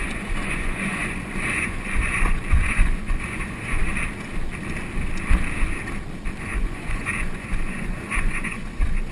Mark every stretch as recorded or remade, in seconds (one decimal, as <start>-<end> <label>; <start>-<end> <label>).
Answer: 0.0-3.8 remade; 3.8-6.4 recorded; 6.4-9.1 remade

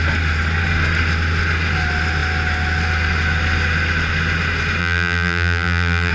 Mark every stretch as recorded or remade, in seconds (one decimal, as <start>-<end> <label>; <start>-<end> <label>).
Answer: 0.0-4.8 recorded; 4.8-6.1 remade

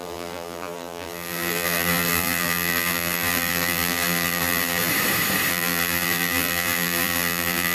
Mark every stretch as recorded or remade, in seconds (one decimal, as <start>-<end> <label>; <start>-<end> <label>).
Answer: 0.0-4.9 remade; 4.9-5.5 recorded; 5.5-7.7 remade

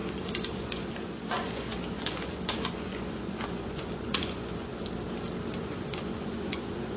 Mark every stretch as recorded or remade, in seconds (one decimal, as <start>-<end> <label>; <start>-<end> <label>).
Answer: 0.0-4.7 remade; 4.7-5.6 recorded; 5.6-7.0 remade